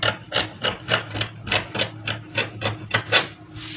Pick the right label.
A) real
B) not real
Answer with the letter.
A